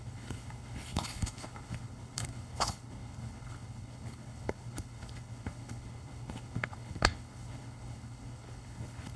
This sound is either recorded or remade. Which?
remade